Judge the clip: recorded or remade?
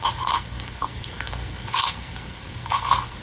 remade